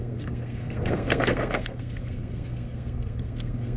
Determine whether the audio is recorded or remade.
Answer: remade